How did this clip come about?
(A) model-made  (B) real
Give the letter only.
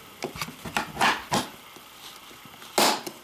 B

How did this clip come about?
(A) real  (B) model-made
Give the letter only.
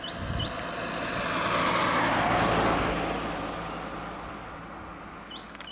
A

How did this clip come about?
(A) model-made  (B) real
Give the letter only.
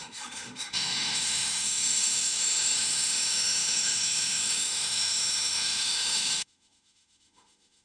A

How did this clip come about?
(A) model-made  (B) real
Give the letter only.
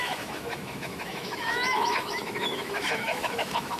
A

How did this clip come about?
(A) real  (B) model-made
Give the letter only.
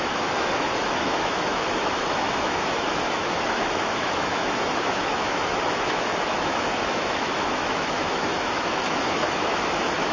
B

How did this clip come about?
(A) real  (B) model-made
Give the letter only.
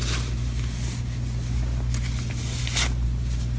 A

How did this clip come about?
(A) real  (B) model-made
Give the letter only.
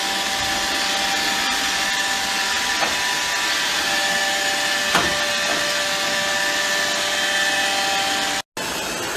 A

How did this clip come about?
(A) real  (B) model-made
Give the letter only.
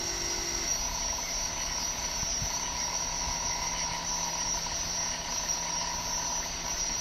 A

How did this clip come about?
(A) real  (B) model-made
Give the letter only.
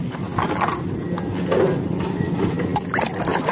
A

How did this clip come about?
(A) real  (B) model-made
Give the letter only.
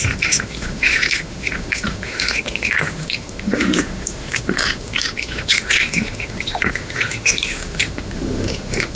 B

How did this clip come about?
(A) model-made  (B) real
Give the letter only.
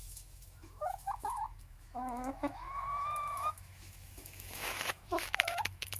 A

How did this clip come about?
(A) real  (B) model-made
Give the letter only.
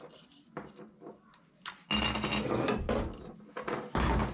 A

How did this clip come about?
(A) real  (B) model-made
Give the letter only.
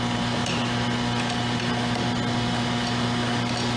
A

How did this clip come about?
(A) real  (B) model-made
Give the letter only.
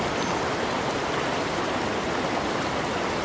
A